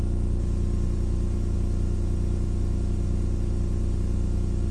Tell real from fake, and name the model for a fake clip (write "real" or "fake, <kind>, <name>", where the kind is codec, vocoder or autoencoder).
real